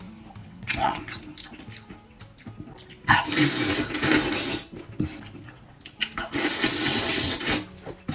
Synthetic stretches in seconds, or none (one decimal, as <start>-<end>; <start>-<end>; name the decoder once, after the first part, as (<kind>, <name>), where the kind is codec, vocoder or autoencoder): 0.4-1.2 (vocoder, WaveNeXt); 6.5-7.4